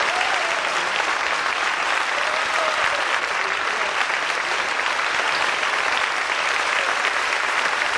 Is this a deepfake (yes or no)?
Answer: yes